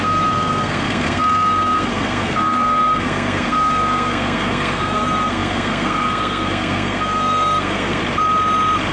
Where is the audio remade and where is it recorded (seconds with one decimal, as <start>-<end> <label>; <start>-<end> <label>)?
0.0-8.0 remade; 8.0-8.9 recorded